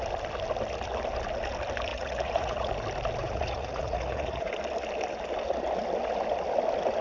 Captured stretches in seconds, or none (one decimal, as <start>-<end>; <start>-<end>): 0.0-1.9; 2.7-3.2; 4.5-7.0